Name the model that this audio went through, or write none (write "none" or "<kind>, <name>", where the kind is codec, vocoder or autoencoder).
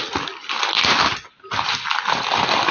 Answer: none